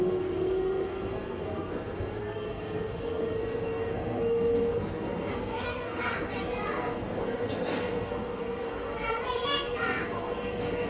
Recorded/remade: remade